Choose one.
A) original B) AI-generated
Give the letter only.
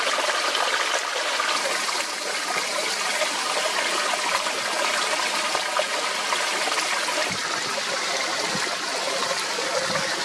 A